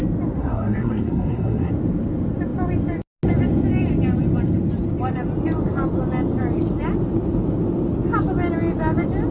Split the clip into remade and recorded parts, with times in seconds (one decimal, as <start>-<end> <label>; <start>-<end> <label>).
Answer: 0.0-0.4 recorded; 0.4-1.7 remade; 1.7-9.3 recorded